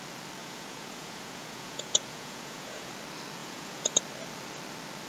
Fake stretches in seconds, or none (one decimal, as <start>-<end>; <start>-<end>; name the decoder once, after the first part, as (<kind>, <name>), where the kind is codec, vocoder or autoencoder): 0.4-2.9 (vocoder, Vocos); 3.4-4.0